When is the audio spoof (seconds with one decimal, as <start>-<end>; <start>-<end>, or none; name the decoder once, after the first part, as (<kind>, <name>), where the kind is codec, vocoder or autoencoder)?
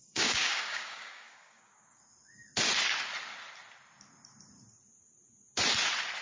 0.0-2.0 (codec, DAC)